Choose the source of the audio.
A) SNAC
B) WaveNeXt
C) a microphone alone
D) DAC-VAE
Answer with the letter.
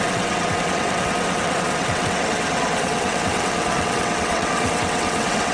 B